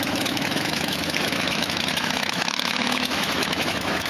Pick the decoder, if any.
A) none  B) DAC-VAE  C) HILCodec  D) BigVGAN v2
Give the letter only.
B